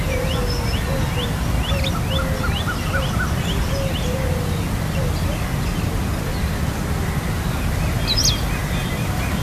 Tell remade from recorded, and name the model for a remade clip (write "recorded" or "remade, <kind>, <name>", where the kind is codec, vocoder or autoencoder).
recorded